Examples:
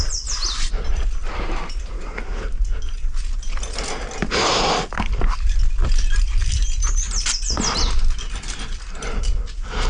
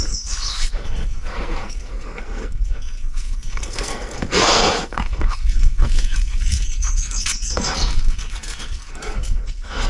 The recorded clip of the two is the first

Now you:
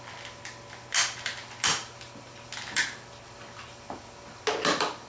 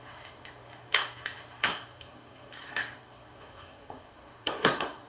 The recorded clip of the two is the first